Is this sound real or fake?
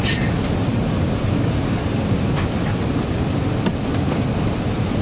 real